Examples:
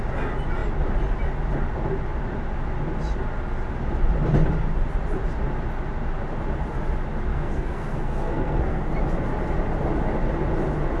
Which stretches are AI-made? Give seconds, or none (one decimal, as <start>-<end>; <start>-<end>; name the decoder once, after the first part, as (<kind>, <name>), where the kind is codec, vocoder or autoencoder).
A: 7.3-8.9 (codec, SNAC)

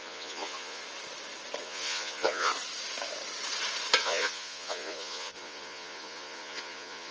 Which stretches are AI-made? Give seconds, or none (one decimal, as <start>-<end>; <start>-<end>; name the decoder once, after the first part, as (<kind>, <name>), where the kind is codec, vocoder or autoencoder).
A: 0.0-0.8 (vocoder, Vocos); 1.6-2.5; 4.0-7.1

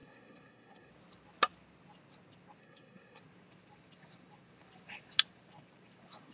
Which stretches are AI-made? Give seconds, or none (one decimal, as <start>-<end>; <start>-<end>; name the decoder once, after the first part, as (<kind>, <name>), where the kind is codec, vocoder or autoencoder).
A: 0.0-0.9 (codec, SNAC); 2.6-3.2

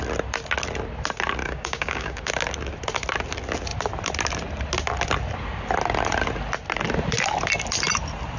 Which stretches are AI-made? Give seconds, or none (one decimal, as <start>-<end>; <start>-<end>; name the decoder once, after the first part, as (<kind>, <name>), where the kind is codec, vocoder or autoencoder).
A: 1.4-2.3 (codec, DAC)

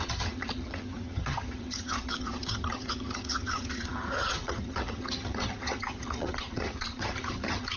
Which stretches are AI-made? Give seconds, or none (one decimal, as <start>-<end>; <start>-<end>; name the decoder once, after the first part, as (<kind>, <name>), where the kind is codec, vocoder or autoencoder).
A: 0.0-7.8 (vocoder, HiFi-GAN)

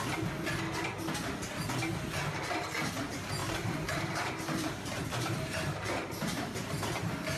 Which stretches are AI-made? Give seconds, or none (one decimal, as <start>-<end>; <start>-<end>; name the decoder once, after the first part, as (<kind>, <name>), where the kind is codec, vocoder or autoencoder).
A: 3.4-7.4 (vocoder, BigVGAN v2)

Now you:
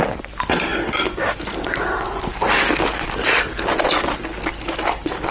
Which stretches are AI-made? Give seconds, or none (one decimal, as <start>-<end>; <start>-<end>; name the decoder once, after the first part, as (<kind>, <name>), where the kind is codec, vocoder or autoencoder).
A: none

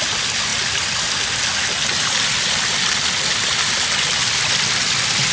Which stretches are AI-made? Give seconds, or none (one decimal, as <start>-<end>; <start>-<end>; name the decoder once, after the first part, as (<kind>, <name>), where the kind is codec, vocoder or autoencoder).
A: none